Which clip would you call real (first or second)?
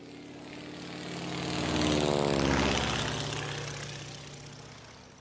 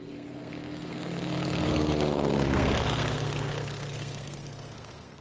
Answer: first